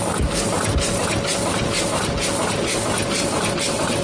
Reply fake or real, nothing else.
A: real